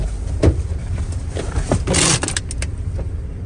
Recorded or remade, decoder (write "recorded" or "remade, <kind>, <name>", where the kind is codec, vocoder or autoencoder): recorded